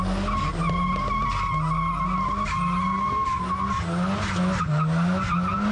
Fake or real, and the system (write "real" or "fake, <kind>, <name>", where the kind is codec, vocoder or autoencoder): real